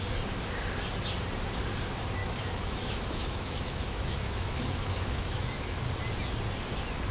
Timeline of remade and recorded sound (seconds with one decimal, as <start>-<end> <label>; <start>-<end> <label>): 0.0-2.2 recorded; 2.2-5.8 remade; 5.8-7.1 recorded